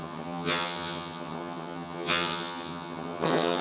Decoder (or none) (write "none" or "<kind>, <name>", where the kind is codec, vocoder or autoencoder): vocoder, HiFi-GAN